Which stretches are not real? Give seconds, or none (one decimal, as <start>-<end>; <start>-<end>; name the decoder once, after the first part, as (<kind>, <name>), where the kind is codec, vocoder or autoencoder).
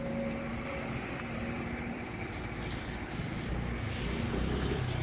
0.5-3.5 (vocoder, BigVGAN v2)